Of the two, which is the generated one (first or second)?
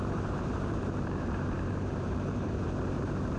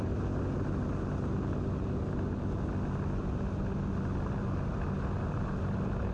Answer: first